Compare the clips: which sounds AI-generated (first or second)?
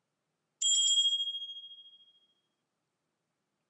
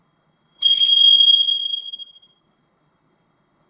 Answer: second